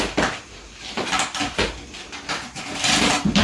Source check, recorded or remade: recorded